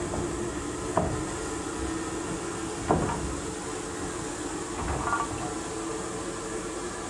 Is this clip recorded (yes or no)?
yes